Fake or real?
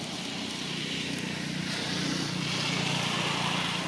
real